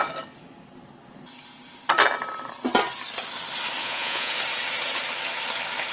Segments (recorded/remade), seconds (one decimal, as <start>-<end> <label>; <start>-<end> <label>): 0.0-3.8 recorded; 3.8-4.3 remade; 4.3-5.9 recorded